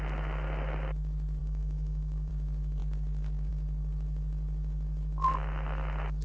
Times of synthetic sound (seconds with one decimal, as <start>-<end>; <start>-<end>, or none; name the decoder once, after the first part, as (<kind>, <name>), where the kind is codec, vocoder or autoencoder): 1.4-2.3 (codec, DAC)